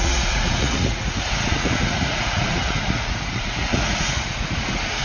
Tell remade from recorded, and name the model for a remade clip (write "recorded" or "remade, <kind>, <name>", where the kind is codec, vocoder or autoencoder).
remade, vocoder, Vocos